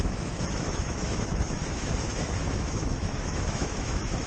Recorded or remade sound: remade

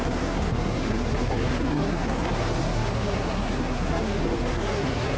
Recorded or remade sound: remade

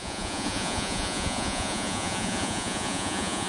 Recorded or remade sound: remade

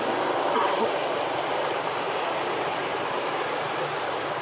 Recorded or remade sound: remade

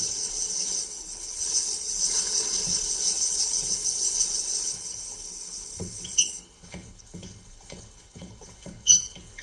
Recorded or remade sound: remade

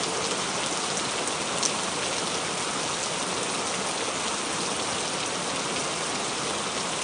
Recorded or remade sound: recorded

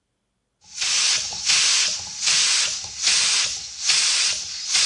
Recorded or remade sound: recorded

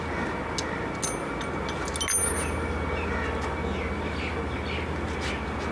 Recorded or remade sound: recorded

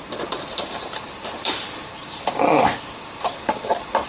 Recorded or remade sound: remade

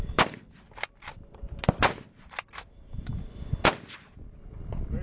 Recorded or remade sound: recorded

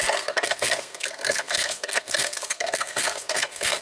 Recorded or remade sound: remade